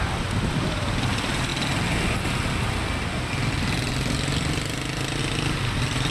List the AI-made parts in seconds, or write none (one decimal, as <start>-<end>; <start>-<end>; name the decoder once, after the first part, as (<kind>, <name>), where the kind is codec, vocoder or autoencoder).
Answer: none